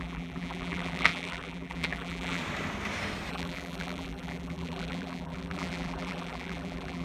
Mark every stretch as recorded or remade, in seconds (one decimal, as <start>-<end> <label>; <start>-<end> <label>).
0.0-2.4 remade; 2.4-3.3 recorded; 3.3-7.0 remade